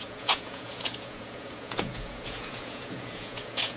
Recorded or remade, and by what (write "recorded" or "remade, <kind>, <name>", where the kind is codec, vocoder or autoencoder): remade, vocoder, Vocos